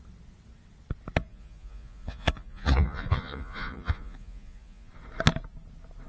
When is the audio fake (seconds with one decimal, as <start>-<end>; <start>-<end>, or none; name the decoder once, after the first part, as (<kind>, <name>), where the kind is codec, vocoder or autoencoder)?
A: 1.2-4.9 (vocoder, Vocos)